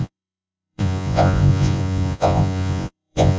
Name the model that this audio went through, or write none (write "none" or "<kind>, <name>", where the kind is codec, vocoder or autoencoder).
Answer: vocoder, Vocos